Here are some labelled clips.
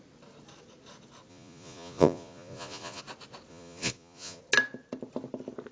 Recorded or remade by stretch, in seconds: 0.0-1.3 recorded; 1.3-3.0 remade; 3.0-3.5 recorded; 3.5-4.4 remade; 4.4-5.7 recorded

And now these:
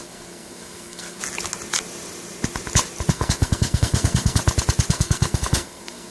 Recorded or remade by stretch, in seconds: 0.0-1.2 remade; 1.2-3.1 recorded; 3.1-4.4 remade; 4.4-4.9 recorded; 4.9-6.1 remade

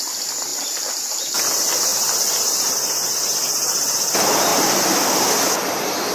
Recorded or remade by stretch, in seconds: 0.0-6.1 recorded